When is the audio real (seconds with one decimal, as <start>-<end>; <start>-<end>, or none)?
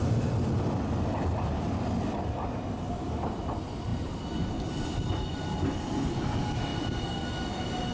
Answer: 0.0-7.9